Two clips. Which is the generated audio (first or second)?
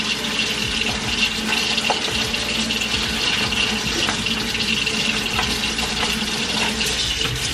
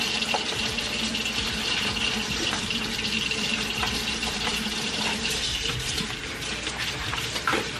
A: second